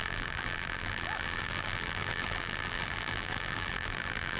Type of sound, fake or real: fake